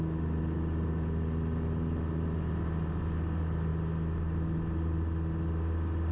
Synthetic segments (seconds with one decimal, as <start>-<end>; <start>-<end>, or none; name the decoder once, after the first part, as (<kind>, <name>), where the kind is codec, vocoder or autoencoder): none